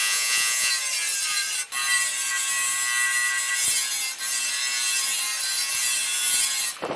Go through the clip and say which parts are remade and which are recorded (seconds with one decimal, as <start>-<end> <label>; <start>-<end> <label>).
0.0-0.7 remade; 0.7-7.0 recorded